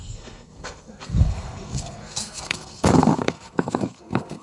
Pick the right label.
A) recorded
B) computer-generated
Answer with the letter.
B